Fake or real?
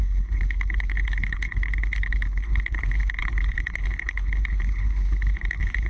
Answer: fake